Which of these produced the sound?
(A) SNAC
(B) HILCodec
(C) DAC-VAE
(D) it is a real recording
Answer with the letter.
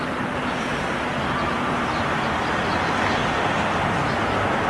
D